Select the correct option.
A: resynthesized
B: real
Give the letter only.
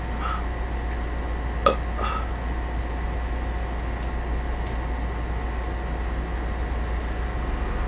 B